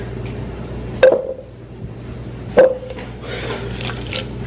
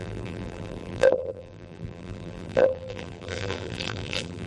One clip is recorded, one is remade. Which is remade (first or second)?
second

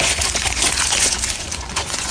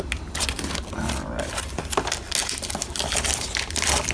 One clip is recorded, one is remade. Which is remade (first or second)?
first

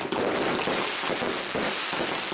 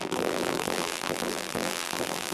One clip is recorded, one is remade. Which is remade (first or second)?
second